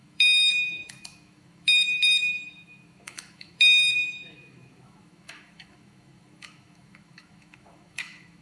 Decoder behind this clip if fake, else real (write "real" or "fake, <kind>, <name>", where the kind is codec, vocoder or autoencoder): fake, autoencoder, DAC-VAE